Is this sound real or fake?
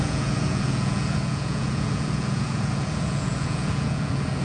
fake